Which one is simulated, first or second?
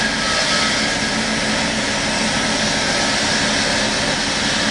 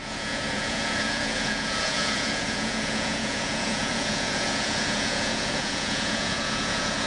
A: second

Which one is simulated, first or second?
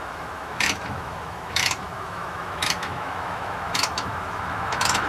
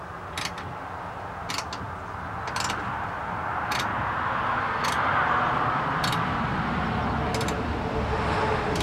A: first